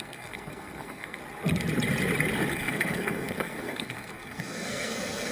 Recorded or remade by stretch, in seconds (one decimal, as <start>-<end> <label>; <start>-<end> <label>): 0.0-1.2 remade; 1.2-2.5 recorded; 2.5-5.3 remade